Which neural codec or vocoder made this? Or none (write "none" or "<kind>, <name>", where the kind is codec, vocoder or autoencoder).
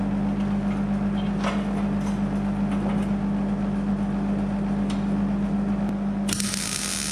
none